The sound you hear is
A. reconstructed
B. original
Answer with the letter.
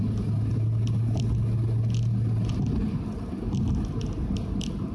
B